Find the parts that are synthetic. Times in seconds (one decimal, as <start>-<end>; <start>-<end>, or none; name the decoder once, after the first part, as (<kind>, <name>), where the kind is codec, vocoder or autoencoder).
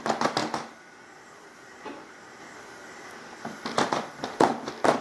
none